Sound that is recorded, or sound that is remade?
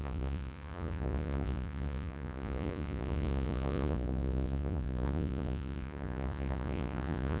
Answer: remade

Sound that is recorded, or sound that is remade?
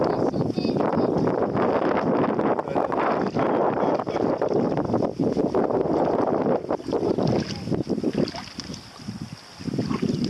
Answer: recorded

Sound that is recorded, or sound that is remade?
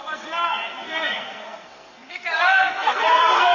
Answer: remade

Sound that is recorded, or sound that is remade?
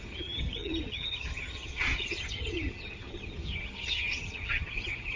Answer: remade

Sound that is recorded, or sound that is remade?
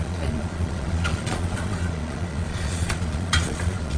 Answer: remade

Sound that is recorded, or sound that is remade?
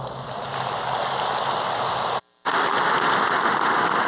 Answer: recorded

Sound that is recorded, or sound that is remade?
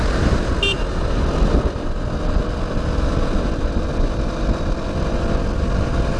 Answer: recorded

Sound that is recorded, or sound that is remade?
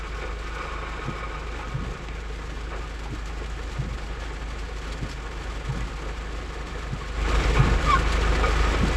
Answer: recorded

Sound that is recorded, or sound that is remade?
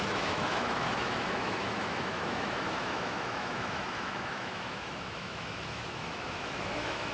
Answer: remade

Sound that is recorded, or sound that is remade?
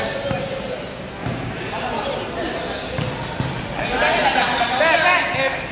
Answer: recorded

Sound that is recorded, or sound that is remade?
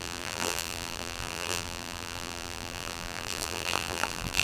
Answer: remade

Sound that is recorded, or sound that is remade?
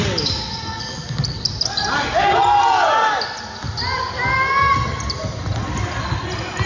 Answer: recorded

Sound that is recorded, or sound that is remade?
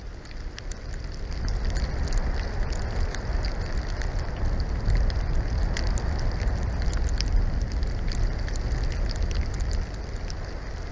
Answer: recorded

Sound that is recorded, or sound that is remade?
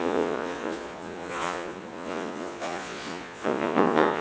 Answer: remade